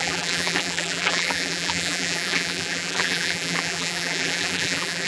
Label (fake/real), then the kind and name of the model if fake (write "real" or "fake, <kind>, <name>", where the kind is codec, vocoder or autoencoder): fake, vocoder, BigVGAN v2